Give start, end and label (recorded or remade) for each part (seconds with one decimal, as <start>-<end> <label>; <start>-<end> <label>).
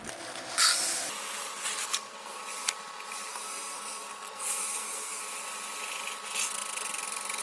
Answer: 0.0-1.8 recorded; 1.8-2.4 remade; 2.4-3.3 recorded; 3.3-5.2 remade; 5.2-7.4 recorded